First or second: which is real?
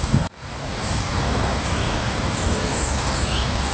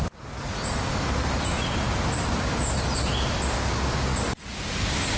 second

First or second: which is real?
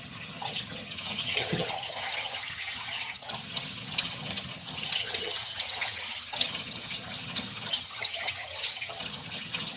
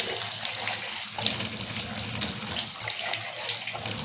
second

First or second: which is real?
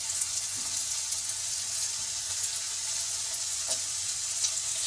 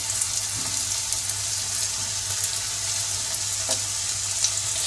second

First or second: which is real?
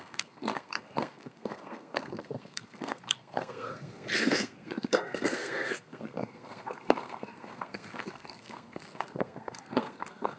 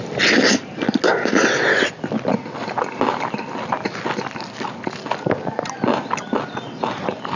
second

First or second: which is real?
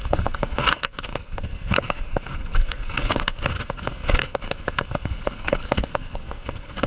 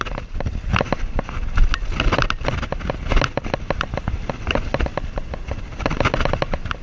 second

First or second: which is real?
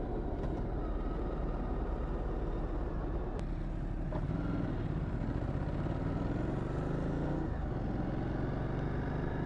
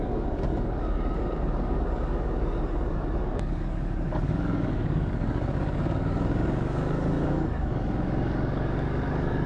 first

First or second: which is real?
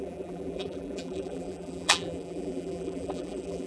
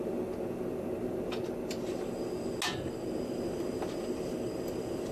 second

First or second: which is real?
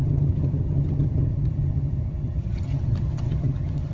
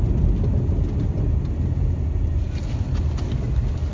second